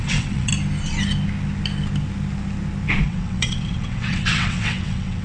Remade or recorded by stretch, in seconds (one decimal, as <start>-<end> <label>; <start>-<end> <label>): 0.0-0.5 remade; 0.5-3.0 recorded; 3.0-5.2 remade